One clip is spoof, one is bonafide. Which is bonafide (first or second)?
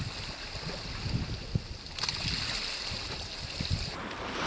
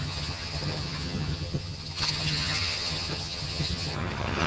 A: first